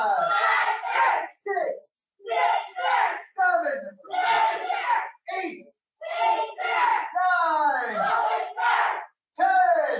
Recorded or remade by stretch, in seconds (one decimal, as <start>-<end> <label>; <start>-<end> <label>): 0.0-10.0 recorded